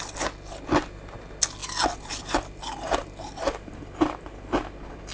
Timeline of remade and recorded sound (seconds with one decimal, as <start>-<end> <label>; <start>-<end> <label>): 0.0-5.1 recorded